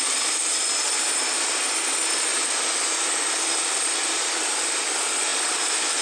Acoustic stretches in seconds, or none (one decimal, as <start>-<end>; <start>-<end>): 0.0-6.0